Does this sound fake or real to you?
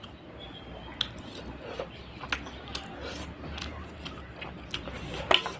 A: real